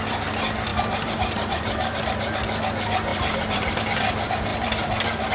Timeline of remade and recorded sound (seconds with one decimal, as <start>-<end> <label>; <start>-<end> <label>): 0.0-0.7 recorded; 0.7-2.0 remade; 2.0-3.1 recorded; 3.1-3.8 remade; 3.8-4.5 recorded; 4.5-5.3 remade

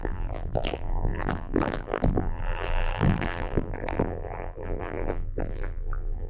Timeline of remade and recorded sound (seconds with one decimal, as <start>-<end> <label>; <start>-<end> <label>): 0.0-6.3 remade